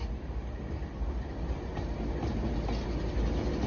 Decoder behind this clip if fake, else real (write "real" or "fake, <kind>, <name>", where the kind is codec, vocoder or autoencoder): real